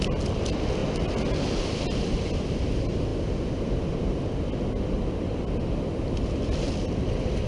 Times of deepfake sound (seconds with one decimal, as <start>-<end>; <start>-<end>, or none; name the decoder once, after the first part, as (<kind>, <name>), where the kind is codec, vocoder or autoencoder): none